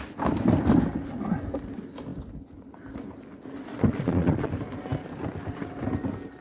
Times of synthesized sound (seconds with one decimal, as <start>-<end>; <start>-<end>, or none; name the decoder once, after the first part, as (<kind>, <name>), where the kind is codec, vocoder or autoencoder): 3.7-4.5 (vocoder, Vocos)